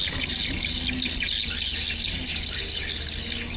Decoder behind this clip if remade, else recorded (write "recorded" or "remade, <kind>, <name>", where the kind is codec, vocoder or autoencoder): recorded